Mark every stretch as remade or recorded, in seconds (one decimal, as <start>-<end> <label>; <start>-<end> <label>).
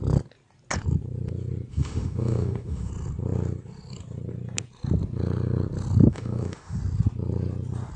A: 0.0-1.7 recorded; 1.7-2.9 remade; 2.9-6.1 recorded; 6.1-6.8 remade; 6.8-8.0 recorded